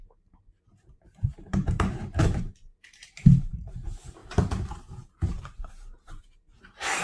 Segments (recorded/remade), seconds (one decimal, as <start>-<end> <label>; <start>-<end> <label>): 0.0-4.2 remade; 4.2-5.7 recorded; 5.7-7.0 remade